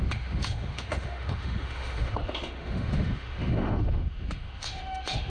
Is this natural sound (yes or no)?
no